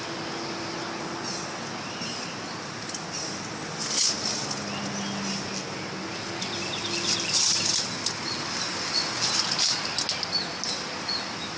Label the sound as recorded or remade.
recorded